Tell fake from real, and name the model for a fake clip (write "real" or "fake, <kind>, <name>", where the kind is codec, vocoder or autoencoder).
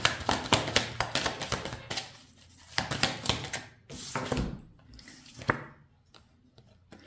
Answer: real